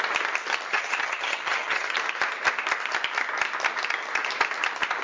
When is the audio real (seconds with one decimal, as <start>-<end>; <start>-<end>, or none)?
0.0-0.7; 1.9-5.0